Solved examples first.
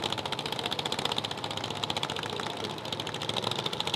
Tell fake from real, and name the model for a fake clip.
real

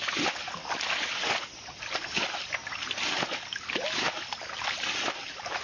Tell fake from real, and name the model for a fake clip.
real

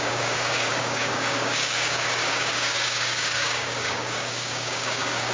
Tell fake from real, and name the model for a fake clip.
fake, codec, DAC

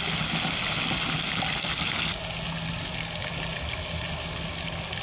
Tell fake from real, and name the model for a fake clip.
real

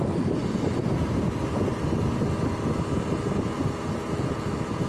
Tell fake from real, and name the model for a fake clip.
real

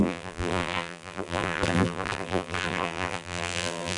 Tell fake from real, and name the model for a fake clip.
fake, vocoder, BigVGAN v2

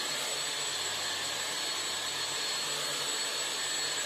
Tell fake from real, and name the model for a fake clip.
real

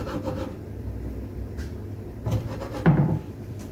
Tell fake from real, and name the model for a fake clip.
fake, vocoder, BigVGAN v2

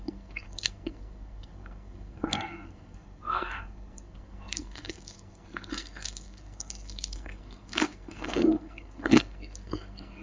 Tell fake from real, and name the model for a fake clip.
fake, codec, SNAC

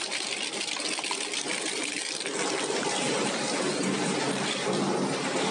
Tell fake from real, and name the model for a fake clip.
real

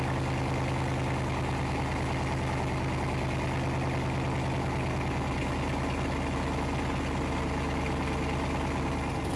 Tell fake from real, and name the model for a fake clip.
real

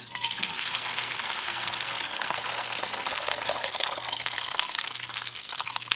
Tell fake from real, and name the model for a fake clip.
fake, codec, SNAC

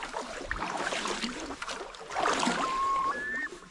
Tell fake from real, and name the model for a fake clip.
fake, vocoder, BigVGAN v2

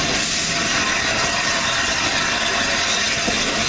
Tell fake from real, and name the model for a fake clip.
real